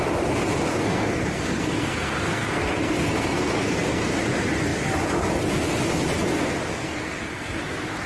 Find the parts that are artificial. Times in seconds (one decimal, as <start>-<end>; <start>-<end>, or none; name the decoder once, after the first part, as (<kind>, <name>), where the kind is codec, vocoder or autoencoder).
0.7-4.1 (codec, SNAC); 6.7-7.6